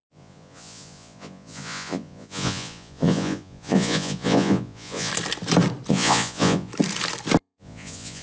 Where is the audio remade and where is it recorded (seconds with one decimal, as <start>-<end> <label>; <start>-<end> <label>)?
0.0-5.1 remade; 5.1-5.9 recorded; 5.9-6.7 remade; 6.7-7.4 recorded; 7.4-8.2 remade